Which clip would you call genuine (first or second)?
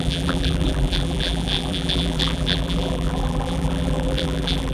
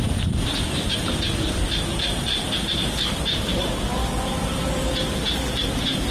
second